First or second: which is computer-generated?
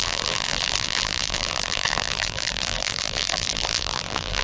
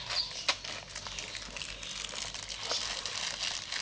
first